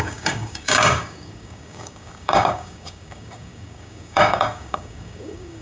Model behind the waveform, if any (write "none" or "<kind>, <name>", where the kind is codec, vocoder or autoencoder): codec, DAC